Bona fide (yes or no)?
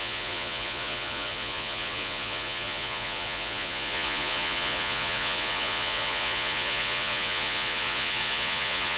no